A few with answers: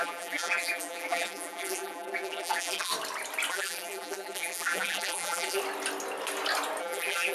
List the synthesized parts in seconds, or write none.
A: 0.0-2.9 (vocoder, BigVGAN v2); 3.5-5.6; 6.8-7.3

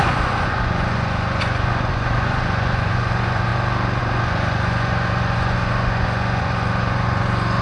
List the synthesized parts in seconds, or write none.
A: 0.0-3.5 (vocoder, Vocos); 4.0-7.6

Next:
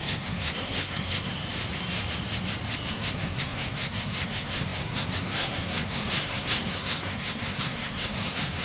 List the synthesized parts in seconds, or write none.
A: 0.0-1.4 (codec, SNAC); 2.9-8.6

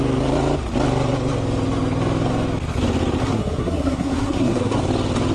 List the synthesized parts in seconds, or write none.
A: 3.2-4.8 (codec, SNAC)

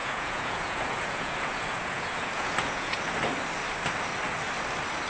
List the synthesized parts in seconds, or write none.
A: 0.0-3.0 (vocoder, Vocos)